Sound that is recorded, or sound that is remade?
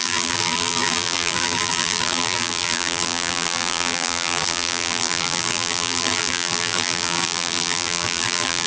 remade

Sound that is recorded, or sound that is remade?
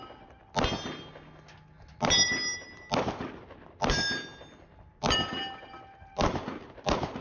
recorded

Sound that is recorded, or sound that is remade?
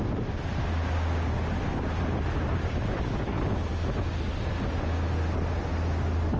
recorded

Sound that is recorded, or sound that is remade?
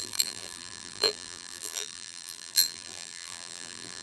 remade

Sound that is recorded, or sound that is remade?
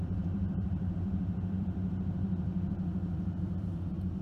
remade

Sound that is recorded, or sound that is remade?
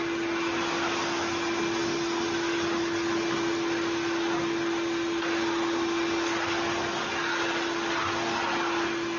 recorded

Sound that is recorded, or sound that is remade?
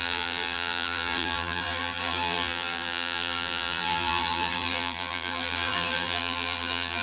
remade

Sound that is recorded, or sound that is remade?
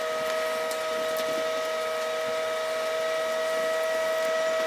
recorded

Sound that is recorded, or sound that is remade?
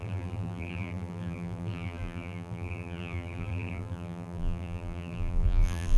remade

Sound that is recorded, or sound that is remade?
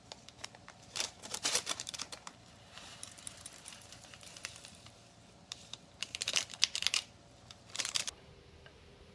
remade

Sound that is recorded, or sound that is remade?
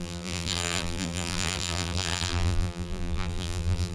remade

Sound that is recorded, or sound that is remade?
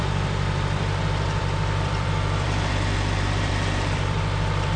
remade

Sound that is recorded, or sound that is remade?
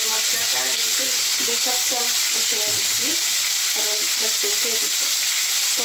recorded